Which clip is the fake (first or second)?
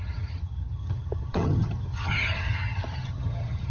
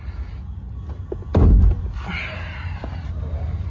first